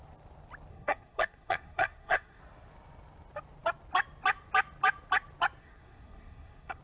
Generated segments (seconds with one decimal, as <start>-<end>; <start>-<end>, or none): 0.7-2.4; 5.6-6.8